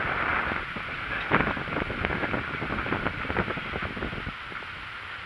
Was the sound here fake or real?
real